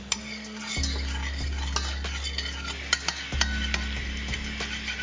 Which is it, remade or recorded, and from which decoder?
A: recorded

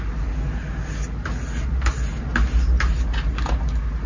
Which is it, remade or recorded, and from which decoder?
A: recorded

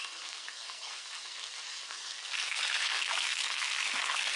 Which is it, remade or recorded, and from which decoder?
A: remade, codec, SNAC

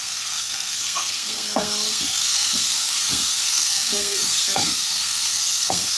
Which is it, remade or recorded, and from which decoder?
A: remade, codec, SNAC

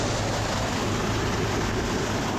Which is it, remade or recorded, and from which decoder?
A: recorded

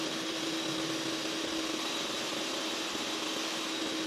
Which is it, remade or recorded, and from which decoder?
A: recorded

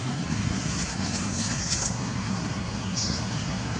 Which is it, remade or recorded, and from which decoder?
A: remade, codec, SNAC